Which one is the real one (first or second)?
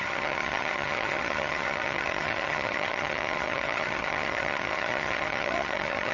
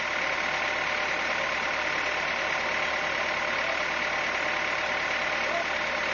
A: second